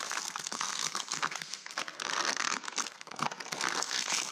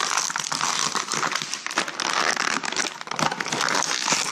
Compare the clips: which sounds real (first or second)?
second